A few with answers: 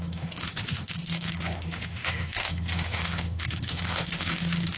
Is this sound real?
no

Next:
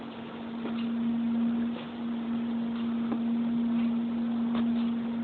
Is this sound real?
yes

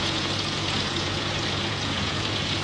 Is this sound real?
no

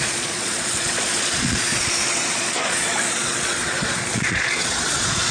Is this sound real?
no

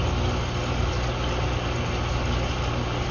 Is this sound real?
yes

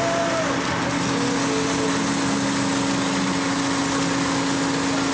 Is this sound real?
yes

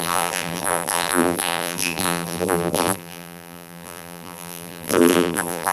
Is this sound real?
no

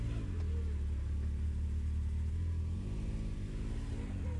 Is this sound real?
yes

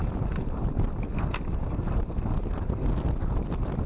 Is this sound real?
no